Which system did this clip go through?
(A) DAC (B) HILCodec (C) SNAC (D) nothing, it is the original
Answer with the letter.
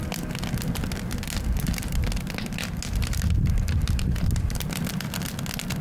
D